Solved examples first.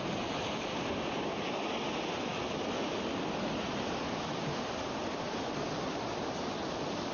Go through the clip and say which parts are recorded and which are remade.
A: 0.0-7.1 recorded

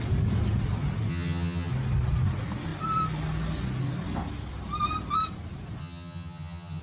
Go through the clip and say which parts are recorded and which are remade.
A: 0.0-1.1 recorded; 1.1-1.7 remade; 1.7-5.8 recorded; 5.8-6.8 remade

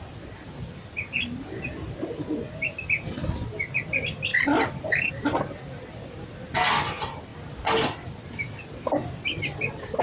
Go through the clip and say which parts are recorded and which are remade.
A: 0.0-4.3 recorded; 4.3-5.1 remade; 5.1-10.0 recorded

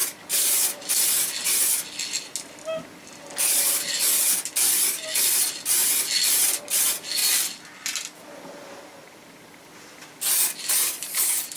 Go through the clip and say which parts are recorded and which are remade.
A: 0.0-3.6 recorded; 3.6-5.8 remade; 5.8-6.7 recorded; 6.7-7.2 remade; 7.2-9.1 recorded; 9.1-11.6 remade

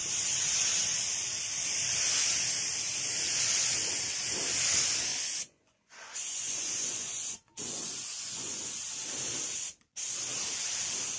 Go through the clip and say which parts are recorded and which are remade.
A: 0.0-5.1 recorded; 5.1-8.7 remade; 8.7-11.2 recorded

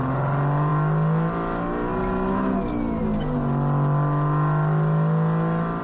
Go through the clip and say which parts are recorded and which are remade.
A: 0.0-5.8 recorded